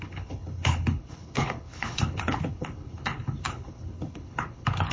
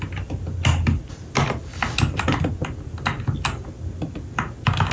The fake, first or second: first